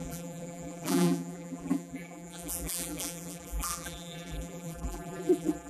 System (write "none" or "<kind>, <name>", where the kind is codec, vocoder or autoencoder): vocoder, BigVGAN v2